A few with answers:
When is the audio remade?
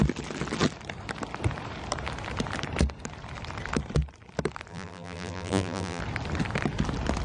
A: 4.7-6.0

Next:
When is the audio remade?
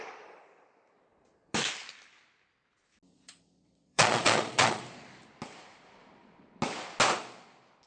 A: 3.1-4.8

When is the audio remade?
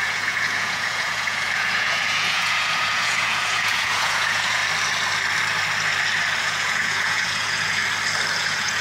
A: 0.0-4.6; 6.4-7.8; 8.4-8.8